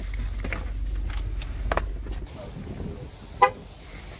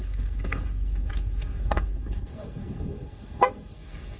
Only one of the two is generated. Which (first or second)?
second